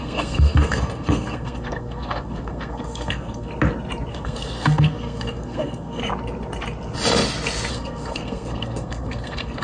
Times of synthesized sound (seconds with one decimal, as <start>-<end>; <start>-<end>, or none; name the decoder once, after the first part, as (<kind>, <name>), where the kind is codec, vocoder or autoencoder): 0.0-3.5 (codec, SNAC); 4.1-6.0; 7.7-9.6